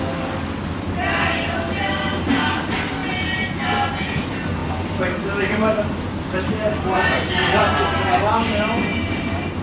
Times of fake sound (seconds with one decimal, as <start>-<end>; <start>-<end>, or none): none